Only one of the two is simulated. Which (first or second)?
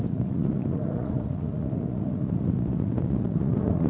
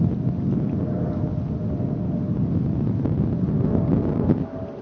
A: first